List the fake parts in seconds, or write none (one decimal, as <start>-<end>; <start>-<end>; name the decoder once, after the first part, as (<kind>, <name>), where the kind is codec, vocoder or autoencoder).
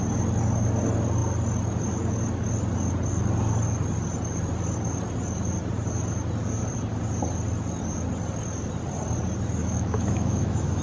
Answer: 9.6-10.8 (autoencoder, DAC-VAE)